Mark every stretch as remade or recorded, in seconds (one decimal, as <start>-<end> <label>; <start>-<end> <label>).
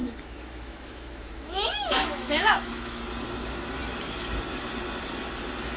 0.0-3.0 remade; 3.0-5.8 recorded